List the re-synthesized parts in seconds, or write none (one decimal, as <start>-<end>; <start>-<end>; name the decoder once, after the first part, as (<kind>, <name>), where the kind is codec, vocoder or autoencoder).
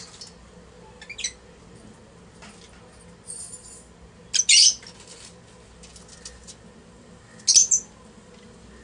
none